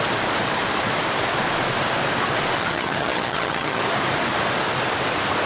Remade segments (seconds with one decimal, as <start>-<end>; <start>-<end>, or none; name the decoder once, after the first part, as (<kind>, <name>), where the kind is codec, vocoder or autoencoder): 2.6-3.8 (vocoder, HiFi-GAN)

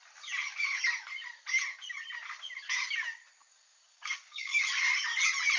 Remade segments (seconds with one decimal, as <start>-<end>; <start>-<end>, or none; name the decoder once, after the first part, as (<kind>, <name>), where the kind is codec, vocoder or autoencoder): 3.5-4.6 (codec, DAC)

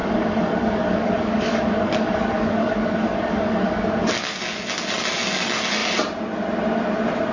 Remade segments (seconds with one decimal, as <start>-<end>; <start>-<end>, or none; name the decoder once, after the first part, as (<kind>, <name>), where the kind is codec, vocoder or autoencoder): 0.0-4.4 (codec, DAC)

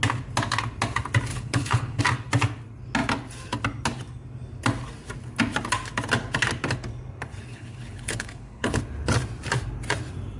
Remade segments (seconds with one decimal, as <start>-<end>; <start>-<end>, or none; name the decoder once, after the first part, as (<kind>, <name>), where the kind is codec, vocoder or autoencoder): 1.3-2.0 (codec, HILCodec); 7.5-8.8

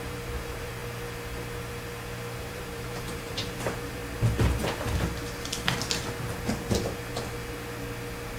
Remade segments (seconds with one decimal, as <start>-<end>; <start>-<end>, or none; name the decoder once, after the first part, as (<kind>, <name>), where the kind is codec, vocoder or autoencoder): 0.0-0.8 (vocoder, BigVGAN v2); 2.4-4.0

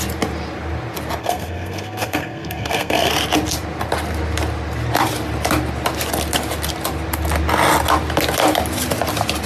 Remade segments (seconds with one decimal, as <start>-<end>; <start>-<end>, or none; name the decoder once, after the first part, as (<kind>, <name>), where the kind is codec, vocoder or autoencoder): 1.2-3.1 (codec, SNAC)